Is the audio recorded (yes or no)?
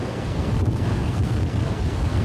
no